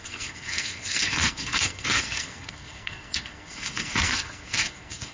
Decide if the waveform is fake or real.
fake